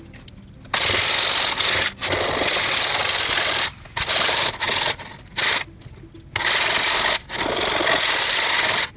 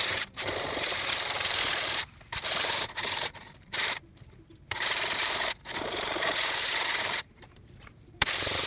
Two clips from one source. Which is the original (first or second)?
first